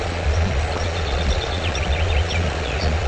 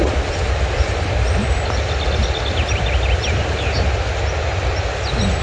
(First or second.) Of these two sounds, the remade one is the first